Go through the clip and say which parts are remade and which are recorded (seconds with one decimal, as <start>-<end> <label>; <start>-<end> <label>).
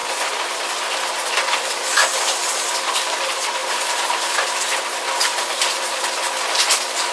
0.0-3.6 recorded; 3.6-4.7 remade; 4.7-5.3 recorded; 5.3-6.0 remade; 6.0-7.1 recorded